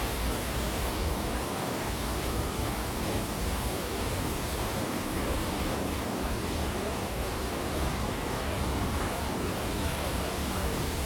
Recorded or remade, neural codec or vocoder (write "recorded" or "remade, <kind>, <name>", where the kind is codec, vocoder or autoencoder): remade, codec, DAC